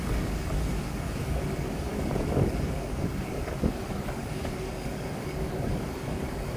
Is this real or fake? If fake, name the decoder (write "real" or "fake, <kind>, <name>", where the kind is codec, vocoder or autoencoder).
fake, codec, DAC